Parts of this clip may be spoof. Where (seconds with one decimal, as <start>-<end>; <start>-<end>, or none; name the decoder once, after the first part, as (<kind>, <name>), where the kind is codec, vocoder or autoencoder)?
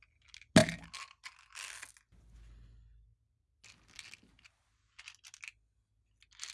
none